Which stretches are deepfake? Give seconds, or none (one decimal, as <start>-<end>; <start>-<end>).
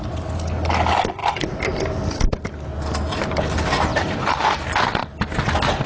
1.2-1.8